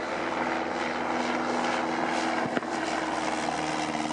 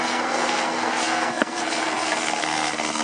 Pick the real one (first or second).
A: first